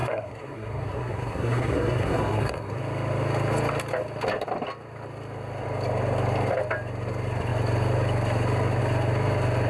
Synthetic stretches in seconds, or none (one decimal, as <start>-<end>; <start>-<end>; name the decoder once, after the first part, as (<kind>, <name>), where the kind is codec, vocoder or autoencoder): 0.0-2.8 (codec, SNAC)